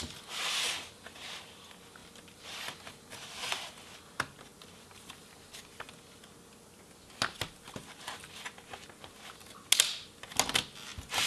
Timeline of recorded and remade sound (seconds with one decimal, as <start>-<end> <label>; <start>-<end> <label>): 0.0-11.3 recorded

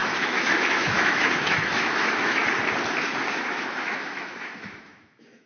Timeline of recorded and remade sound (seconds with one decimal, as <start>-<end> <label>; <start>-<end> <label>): 0.0-2.4 remade; 2.4-3.3 recorded; 3.3-5.5 remade

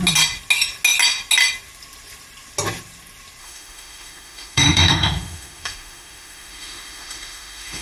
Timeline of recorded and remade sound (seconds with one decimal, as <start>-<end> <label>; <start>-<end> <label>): 0.0-3.4 recorded; 3.4-7.8 remade

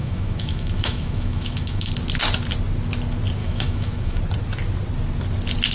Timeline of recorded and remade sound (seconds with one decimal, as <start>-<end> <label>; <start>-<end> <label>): 0.0-1.9 remade; 1.9-3.4 recorded; 3.4-4.2 remade; 4.2-5.7 recorded

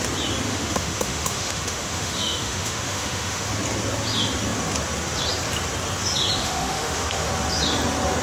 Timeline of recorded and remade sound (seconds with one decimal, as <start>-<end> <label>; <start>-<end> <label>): 0.0-0.5 recorded; 0.5-3.5 remade; 3.5-6.4 recorded; 6.4-7.3 remade; 7.3-8.2 recorded

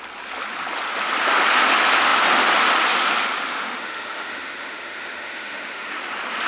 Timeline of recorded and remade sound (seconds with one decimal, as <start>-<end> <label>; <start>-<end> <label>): 0.0-3.5 recorded; 3.5-5.9 remade; 5.9-6.5 recorded

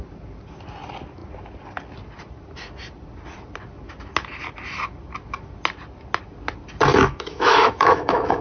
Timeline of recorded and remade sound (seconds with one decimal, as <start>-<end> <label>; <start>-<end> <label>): 0.0-6.9 recorded; 6.9-8.4 remade